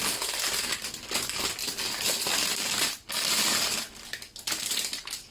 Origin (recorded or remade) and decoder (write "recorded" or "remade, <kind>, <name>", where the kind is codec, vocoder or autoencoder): recorded